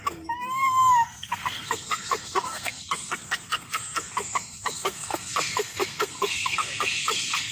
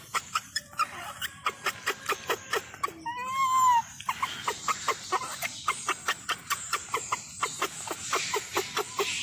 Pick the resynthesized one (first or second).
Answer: first